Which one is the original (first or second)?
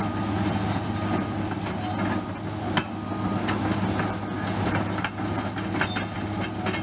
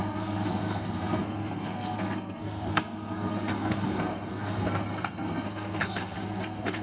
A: first